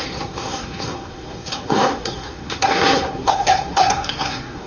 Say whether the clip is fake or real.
fake